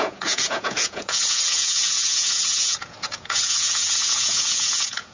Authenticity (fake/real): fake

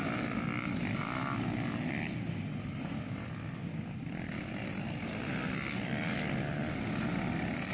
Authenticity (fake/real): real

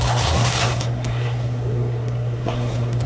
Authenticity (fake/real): fake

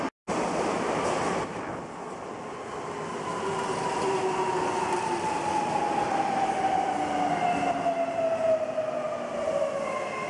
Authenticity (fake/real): real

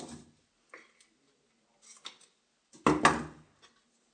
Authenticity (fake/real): real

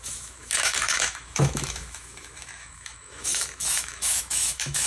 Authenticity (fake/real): fake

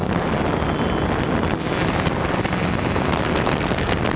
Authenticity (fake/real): real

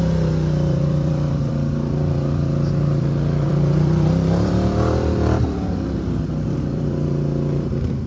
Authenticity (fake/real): fake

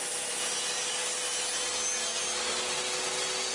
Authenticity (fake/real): real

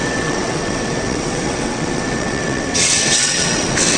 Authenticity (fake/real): fake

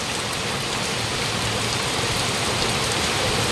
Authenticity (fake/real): real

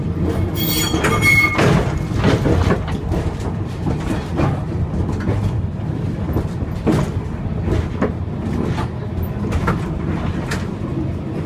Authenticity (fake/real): real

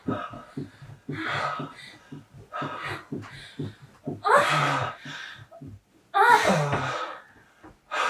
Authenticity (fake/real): real